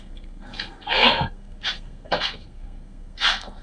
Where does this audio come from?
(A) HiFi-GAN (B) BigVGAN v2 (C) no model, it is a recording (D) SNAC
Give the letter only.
D